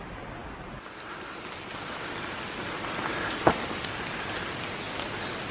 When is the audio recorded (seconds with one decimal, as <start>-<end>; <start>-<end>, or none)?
0.0-5.5